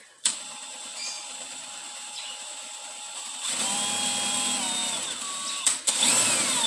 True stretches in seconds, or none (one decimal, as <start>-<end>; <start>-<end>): 4.8-6.7